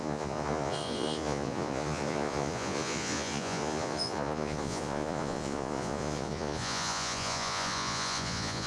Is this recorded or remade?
remade